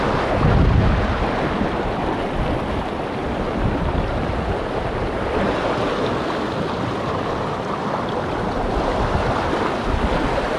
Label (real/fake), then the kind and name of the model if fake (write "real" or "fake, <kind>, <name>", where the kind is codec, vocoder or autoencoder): real